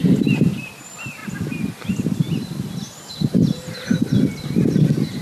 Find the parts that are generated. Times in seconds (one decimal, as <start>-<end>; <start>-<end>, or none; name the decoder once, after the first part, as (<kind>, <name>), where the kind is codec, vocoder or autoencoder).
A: none